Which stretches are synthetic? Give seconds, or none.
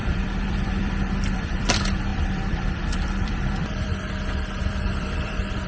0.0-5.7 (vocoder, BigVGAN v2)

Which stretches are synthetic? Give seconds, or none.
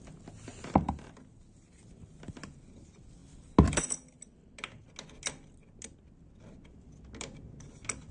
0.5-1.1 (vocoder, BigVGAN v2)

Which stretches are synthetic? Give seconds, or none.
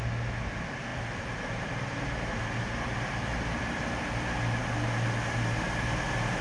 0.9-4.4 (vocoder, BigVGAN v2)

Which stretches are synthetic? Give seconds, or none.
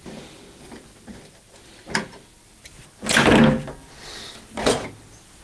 none